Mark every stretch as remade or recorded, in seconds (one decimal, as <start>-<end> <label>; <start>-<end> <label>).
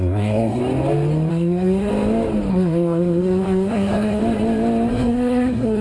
0.0-0.6 remade; 0.6-1.3 recorded; 1.3-1.9 remade; 1.9-2.5 recorded; 2.5-4.2 remade; 4.2-4.9 recorded; 4.9-5.8 remade